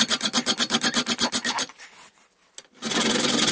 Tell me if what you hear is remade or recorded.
recorded